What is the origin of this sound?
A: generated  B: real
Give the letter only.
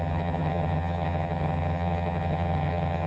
A